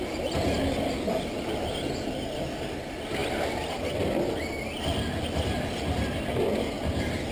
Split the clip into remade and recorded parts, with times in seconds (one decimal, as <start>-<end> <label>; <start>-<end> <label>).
0.0-7.3 recorded